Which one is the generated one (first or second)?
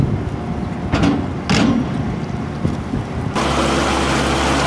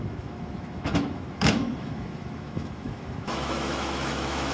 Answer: second